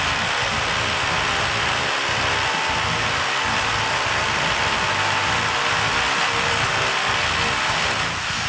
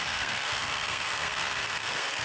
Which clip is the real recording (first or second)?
first